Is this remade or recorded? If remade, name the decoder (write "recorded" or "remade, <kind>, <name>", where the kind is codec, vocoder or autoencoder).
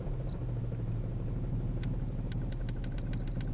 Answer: recorded